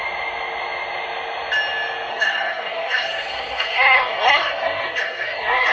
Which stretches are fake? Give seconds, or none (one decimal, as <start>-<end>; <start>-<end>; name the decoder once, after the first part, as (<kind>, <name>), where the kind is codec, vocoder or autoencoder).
2.1-5.7 (codec, SNAC)